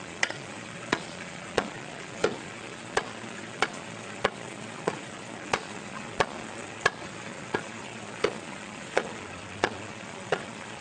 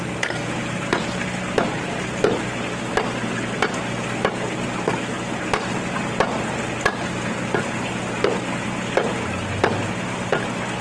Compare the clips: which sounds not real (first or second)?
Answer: first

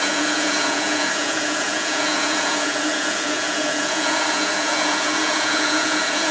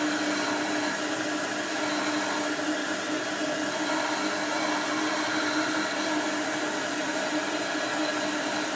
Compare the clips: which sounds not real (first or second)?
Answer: first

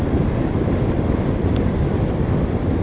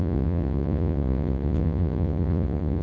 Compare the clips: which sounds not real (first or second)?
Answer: second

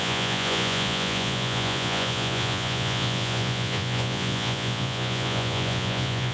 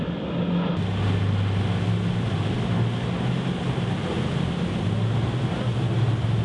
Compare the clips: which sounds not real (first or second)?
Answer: first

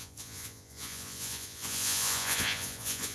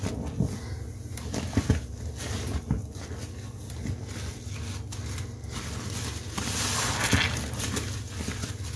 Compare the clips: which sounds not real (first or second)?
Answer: first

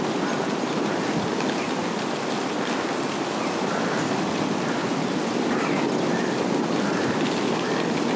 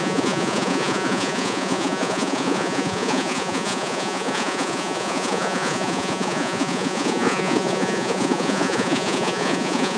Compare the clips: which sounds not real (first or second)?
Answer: second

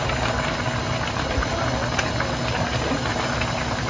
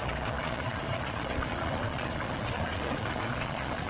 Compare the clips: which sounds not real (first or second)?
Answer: second